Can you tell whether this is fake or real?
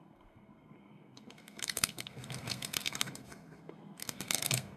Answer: fake